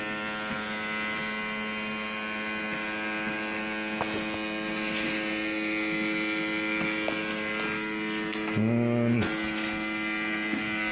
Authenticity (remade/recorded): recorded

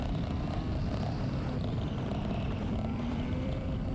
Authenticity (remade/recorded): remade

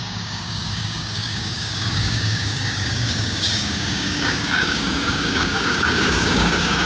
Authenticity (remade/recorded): remade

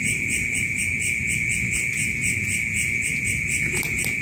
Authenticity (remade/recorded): recorded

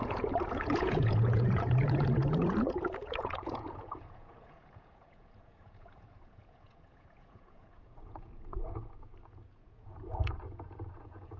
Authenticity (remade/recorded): remade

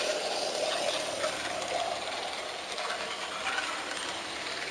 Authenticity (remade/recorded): recorded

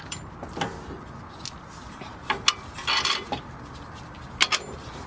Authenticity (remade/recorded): recorded